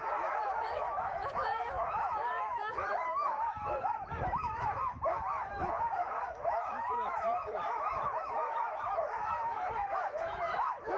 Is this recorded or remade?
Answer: remade